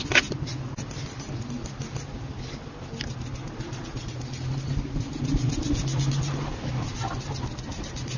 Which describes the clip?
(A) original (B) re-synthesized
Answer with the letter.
A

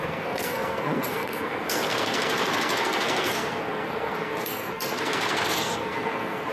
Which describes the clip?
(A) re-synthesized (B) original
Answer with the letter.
A